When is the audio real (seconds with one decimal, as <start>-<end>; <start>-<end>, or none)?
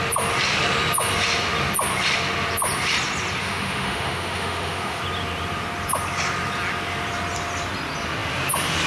0.0-3.4; 5.0-8.9